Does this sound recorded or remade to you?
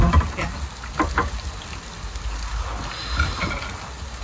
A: recorded